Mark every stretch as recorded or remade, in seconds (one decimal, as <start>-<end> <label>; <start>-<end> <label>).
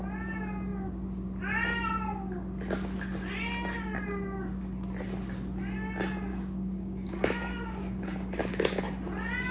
0.0-6.3 recorded; 6.3-8.8 remade; 8.8-9.5 recorded